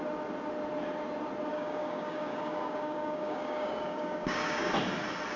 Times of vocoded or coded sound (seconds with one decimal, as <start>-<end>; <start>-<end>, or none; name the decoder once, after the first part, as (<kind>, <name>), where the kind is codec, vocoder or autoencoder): 1.5-4.7 (codec, DAC)